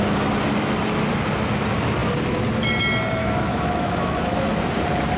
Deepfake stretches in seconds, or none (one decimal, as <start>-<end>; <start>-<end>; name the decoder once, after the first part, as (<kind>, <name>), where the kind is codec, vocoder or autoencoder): 3.2-4.6 (autoencoder, DAC-VAE)

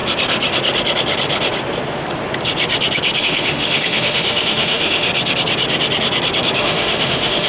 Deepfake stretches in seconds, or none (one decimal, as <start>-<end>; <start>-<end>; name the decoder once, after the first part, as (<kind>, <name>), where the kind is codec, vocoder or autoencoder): 3.2-5.1 (autoencoder, DAC-VAE); 6.6-7.5

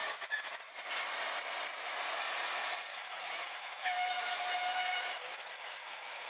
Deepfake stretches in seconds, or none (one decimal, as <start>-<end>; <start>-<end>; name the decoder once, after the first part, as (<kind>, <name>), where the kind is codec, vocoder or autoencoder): 0.0-0.7 (autoencoder, DAC-VAE); 2.9-6.3

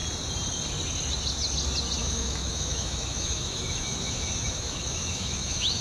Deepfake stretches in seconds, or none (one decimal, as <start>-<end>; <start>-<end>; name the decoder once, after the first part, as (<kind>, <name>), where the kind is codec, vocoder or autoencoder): 2.0-5.8 (autoencoder, DAC-VAE)